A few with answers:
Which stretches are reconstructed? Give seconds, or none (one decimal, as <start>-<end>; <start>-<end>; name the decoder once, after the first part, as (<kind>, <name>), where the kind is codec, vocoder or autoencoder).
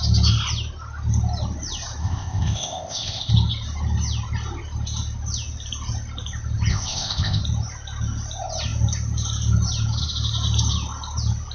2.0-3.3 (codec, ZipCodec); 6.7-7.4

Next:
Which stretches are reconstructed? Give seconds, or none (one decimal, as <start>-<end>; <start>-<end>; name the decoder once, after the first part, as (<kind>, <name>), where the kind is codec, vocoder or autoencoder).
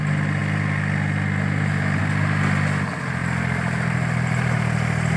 3.2-4.6 (vocoder, BigVGAN v2)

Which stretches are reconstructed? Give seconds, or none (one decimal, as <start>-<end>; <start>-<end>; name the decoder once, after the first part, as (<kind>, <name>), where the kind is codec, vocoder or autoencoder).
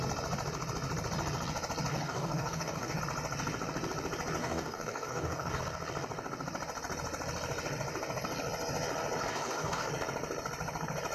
1.9-3.0 (codec, DAC); 4.4-5.6; 9.2-9.9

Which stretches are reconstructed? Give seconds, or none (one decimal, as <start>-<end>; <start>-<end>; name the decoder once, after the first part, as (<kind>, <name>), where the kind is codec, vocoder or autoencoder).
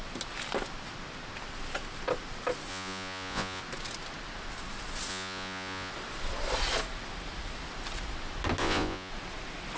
2.7-3.6 (vocoder, Vocos); 5.1-5.9; 8.6-9.1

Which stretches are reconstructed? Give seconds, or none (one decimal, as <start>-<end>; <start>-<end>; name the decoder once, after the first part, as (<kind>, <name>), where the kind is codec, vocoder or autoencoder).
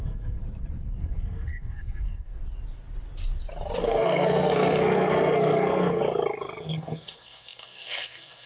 0.0-0.4 (codec, SNAC); 1.0-2.3; 3.8-6.0; 6.6-8.5